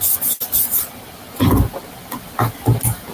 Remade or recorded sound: recorded